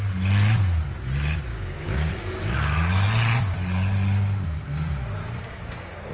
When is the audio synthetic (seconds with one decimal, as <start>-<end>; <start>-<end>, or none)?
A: 1.5-2.1; 5.2-6.1